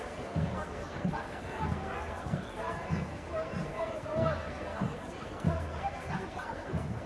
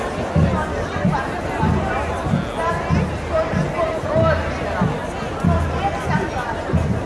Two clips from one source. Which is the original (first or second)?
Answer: second